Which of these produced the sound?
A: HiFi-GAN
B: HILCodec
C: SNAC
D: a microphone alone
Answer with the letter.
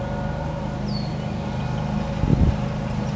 D